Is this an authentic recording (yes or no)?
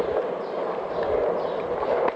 yes